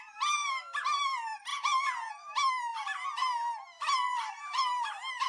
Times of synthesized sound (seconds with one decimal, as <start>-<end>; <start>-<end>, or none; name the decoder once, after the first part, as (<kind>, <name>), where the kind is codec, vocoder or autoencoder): 1.5-2.1 (vocoder, Vocos)